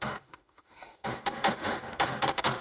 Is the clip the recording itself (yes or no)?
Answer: no